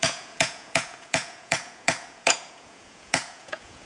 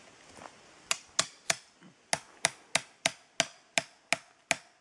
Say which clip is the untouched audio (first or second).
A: second